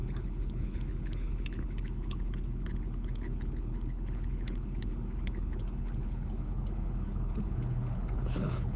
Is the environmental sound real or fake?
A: fake